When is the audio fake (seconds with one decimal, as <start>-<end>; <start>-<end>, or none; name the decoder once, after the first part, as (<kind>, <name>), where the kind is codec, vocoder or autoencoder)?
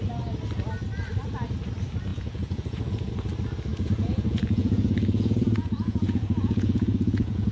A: 2.1-3.1 (vocoder, Vocos); 3.7-7.5